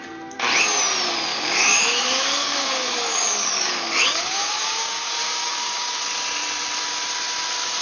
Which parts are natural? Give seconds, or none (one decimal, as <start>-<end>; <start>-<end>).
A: 0.0-1.3; 6.0-7.8